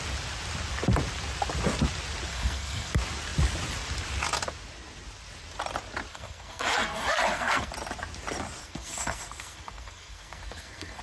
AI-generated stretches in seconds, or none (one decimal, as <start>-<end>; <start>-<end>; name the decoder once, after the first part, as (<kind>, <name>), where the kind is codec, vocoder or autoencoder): 2.3-2.9 (codec, SNAC); 6.1-7.7; 8.6-11.0